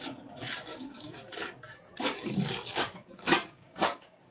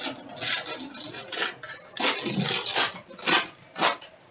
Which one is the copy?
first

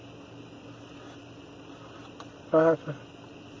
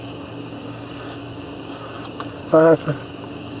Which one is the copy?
second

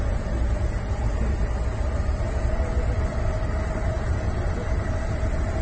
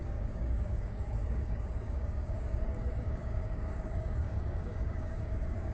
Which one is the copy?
second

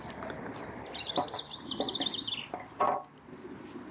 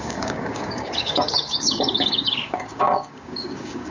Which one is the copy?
second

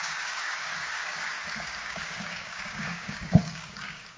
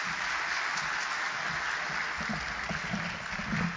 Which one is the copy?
first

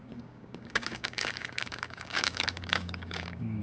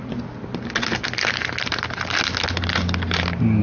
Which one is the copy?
first